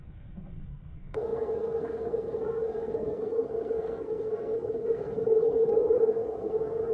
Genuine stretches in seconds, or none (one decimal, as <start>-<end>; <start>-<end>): none